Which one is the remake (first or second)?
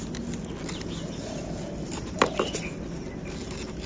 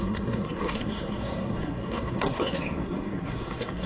second